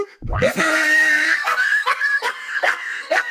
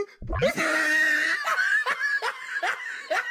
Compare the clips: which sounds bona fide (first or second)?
second